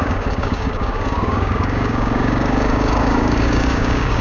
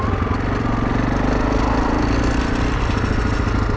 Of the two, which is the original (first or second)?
second